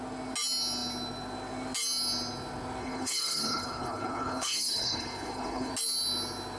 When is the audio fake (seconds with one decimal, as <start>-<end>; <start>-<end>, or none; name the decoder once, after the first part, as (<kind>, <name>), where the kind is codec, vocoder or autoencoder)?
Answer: 2.8-5.7 (codec, HILCodec)